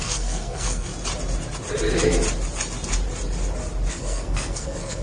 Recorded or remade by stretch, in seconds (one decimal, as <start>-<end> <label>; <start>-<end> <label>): 0.0-0.9 remade; 0.9-3.9 recorded; 3.9-5.0 remade